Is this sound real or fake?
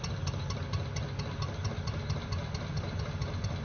real